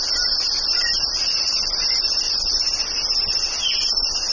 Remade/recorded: recorded